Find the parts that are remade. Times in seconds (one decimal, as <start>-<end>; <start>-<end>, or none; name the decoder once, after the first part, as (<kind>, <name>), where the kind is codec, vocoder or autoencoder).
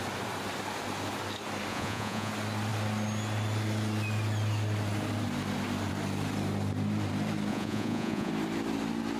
1.7-2.3 (vocoder, Vocos); 7.5-8.3